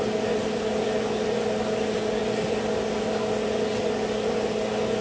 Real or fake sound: real